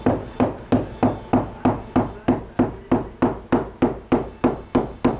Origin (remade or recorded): recorded